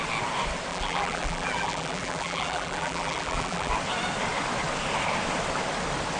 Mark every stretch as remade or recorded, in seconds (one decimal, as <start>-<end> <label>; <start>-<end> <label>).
0.0-0.7 recorded; 0.7-3.7 remade; 3.7-6.2 recorded